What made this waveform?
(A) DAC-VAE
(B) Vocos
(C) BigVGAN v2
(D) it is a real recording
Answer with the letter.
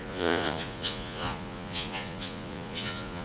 B